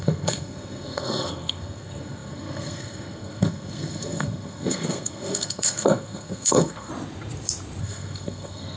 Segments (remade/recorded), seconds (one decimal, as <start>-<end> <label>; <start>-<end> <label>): 0.0-6.9 remade; 6.9-7.8 recorded; 7.8-8.8 remade